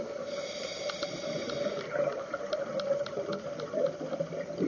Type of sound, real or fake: real